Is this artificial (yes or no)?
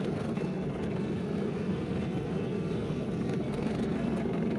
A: yes